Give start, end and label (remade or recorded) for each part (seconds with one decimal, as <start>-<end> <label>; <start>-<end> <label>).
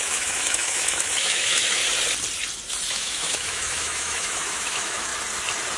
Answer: 0.0-1.8 remade; 1.8-2.9 recorded; 2.9-5.1 remade; 5.1-5.8 recorded